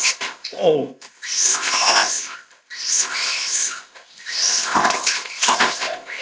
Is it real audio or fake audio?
fake